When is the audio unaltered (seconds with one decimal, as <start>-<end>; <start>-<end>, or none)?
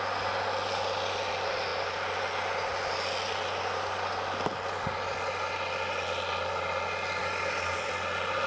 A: 0.0-7.2; 7.9-8.5